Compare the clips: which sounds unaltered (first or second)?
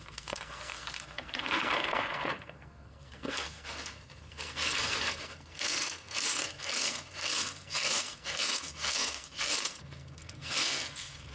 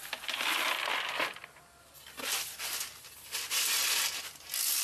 second